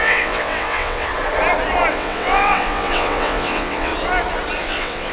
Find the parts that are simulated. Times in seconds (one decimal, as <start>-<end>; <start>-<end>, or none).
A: 0.0-1.1; 1.9-3.9; 4.6-5.1